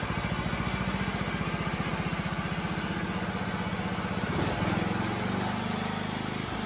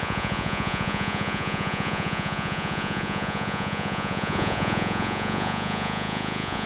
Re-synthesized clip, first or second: second